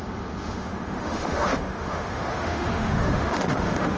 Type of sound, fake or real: fake